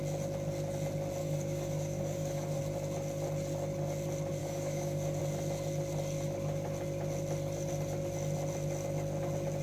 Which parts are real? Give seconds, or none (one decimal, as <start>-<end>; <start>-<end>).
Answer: 0.0-1.2; 2.6-4.4; 5.2-9.6